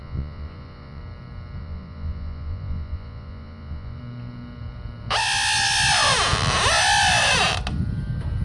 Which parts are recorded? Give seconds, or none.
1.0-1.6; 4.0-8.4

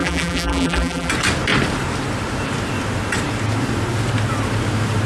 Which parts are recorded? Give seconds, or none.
1.1-5.1